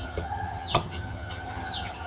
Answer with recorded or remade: remade